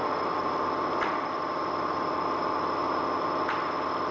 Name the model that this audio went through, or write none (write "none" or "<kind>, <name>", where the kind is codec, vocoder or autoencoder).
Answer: none